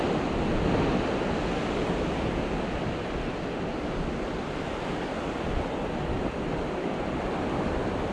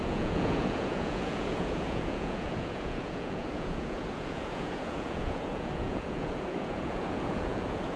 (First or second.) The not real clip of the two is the second